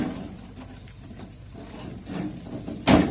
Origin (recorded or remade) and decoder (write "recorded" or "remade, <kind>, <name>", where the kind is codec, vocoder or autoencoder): recorded